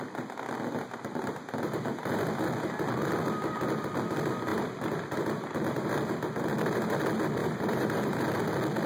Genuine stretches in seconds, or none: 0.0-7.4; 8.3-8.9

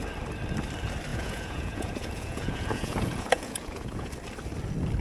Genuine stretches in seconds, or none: 0.0-1.1; 4.1-5.0